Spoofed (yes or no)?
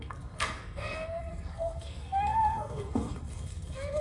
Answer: yes